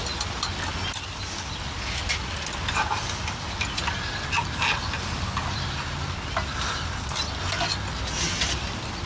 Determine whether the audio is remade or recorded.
recorded